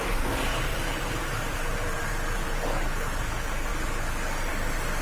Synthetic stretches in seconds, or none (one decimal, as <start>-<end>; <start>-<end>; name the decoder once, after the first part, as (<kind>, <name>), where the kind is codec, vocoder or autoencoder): 0.7-3.2 (vocoder, BigVGAN v2)